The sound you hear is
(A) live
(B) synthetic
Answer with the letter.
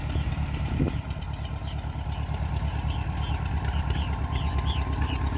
A